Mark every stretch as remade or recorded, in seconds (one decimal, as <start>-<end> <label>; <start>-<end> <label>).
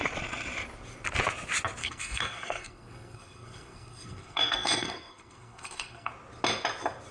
0.0-1.8 recorded; 1.8-6.1 remade; 6.1-7.1 recorded